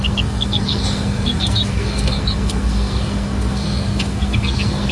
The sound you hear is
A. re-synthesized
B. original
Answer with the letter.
A